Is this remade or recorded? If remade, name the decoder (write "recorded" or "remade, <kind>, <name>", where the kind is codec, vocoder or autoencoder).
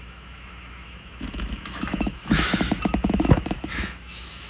remade, autoencoder, DAC-VAE